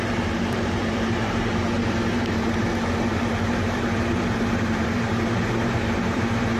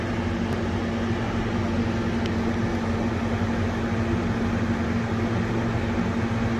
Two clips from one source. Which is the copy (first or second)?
first